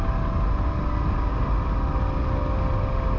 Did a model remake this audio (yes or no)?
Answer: no